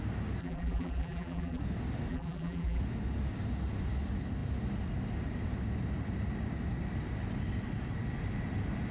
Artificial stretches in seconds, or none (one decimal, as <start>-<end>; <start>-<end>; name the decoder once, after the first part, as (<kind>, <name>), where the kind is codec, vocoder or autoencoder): 0.4-1.6 (vocoder, BigVGAN v2); 2.1-2.8